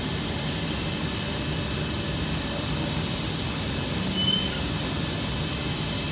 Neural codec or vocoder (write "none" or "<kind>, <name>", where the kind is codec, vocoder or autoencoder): none